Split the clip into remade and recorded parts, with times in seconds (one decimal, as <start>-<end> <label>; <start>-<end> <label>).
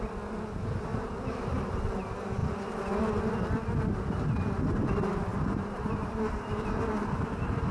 0.0-0.9 recorded; 0.9-1.7 remade; 1.7-5.3 recorded; 5.3-6.7 remade; 6.7-7.7 recorded